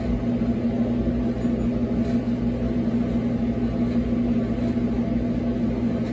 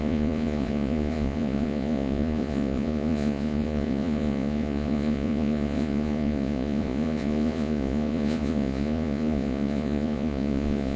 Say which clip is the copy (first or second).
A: second